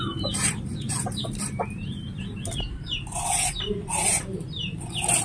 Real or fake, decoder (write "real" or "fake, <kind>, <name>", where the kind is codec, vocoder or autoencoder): fake, vocoder, BigVGAN v2